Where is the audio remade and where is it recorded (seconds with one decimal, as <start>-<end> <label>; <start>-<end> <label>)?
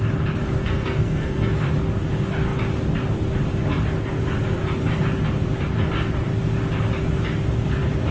0.0-0.6 recorded; 0.6-1.7 remade; 1.7-8.1 recorded